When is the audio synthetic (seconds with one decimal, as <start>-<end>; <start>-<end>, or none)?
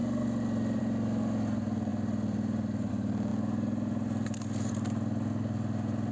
1.9-2.9